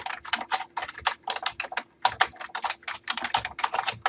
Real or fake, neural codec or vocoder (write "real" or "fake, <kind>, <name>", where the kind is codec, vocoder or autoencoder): real